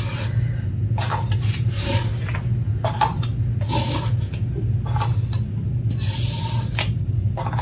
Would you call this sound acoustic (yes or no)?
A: yes